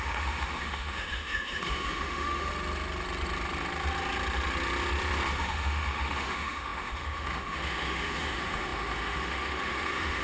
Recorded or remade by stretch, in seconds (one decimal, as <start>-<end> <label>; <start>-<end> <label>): 0.0-2.5 remade; 2.5-5.4 recorded; 5.4-10.2 remade